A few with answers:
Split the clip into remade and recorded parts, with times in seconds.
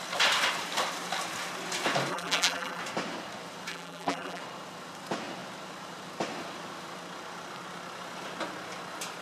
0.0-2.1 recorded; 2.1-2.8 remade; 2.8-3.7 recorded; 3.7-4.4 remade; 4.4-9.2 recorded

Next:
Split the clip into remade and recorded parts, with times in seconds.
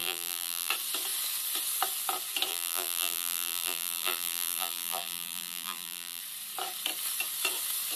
0.0-0.7 remade; 0.7-2.5 recorded; 2.5-6.2 remade; 6.2-8.0 recorded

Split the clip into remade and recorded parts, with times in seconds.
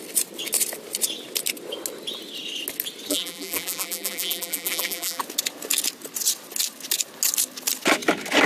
0.0-3.1 recorded; 3.1-5.2 remade; 5.2-8.5 recorded